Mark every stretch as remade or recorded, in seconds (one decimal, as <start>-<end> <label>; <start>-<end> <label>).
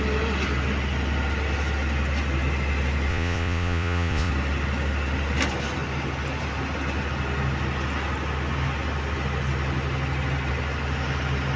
0.0-3.1 recorded; 3.1-4.3 remade; 4.3-11.6 recorded